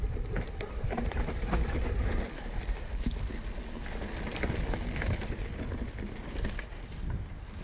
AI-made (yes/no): no